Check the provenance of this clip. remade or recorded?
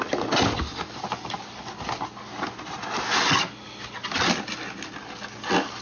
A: recorded